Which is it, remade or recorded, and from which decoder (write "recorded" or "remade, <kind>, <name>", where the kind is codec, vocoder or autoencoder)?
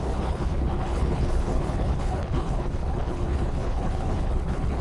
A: remade, codec, HILCodec